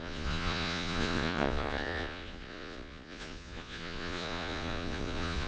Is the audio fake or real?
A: fake